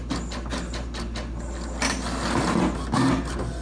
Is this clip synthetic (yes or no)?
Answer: no